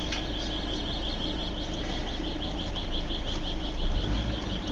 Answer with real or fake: real